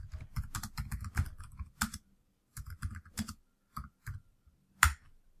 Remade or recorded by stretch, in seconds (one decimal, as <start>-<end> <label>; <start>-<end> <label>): 0.0-5.4 recorded